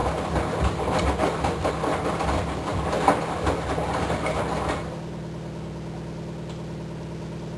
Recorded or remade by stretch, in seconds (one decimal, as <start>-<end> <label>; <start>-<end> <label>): 0.0-7.6 recorded